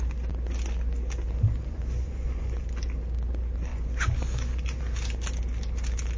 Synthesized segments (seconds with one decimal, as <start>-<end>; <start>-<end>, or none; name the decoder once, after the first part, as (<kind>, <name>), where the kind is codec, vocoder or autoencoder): 1.6-2.6 (vocoder, Vocos); 3.7-4.8